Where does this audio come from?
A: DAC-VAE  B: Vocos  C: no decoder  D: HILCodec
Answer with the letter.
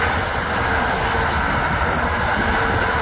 C